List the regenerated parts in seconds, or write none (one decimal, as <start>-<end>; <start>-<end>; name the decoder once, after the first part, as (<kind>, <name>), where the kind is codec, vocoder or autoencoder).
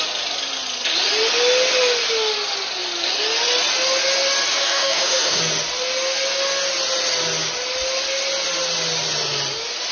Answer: 4.5-5.4 (autoencoder, DAC-VAE)